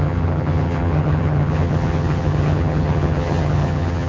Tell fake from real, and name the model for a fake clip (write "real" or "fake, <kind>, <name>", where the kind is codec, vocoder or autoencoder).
fake, vocoder, HiFi-GAN